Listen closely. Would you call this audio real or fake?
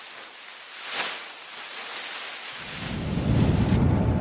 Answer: real